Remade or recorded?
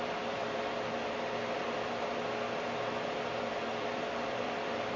remade